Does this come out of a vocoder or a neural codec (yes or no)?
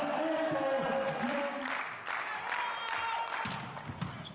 no